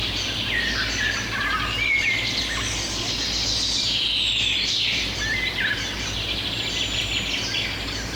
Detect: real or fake real